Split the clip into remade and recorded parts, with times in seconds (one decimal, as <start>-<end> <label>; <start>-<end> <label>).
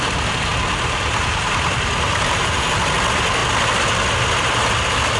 0.0-0.5 recorded; 0.5-2.7 remade; 2.7-5.2 recorded